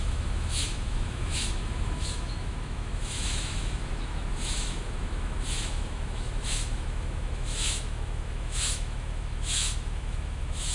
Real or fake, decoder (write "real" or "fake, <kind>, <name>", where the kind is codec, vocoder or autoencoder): fake, autoencoder, DAC-VAE